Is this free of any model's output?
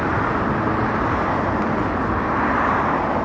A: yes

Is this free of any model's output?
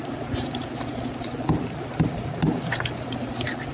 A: yes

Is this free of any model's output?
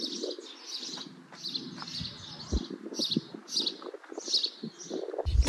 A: yes